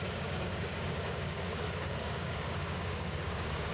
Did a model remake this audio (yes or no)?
yes